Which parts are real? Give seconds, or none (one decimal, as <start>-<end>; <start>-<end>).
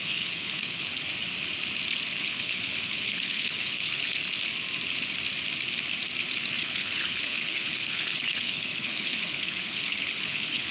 0.9-2.2; 4.2-6.6